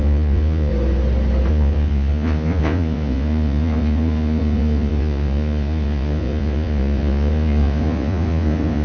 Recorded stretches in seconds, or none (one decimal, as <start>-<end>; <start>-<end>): 0.7-1.5